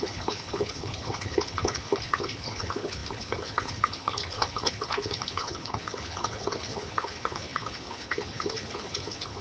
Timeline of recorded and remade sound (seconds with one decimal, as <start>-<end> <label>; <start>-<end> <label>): 0.0-9.4 remade